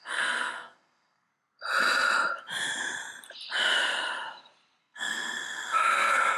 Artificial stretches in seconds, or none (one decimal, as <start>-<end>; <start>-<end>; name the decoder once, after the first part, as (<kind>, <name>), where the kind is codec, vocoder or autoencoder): 0.0-1.3 (codec, SNAC); 4.8-6.4